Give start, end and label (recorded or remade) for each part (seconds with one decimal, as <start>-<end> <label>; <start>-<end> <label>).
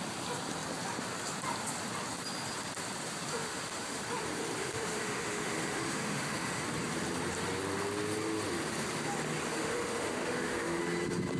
0.0-3.3 recorded; 3.3-4.0 remade; 4.0-4.6 recorded; 4.6-6.6 remade; 6.6-9.5 recorded; 9.5-10.8 remade; 10.8-11.4 recorded